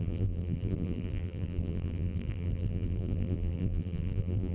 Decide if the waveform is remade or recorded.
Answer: remade